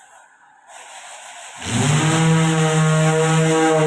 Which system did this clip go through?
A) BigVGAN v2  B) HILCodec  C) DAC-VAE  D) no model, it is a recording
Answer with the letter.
D